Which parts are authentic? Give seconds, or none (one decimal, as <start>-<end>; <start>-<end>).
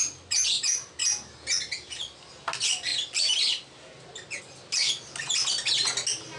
0.0-6.4